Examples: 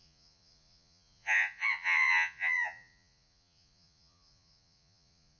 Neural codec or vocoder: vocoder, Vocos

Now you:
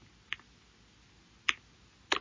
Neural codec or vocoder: none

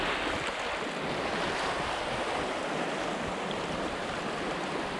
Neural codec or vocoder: none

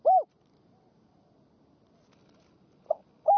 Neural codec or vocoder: none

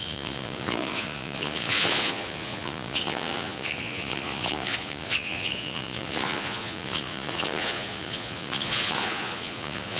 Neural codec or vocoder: vocoder, Vocos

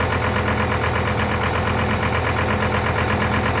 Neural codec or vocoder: none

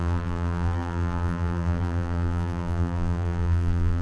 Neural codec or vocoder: vocoder, BigVGAN v2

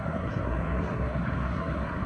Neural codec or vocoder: codec, SNAC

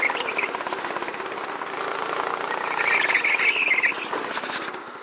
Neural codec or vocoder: none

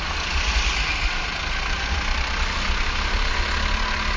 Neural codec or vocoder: none